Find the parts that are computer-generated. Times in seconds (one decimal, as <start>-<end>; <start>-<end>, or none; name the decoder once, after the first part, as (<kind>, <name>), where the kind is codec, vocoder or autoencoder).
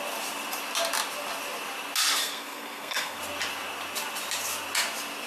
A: 2.2-3.2 (codec, SNAC)